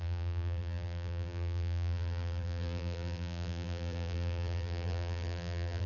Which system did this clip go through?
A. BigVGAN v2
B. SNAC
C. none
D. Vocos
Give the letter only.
A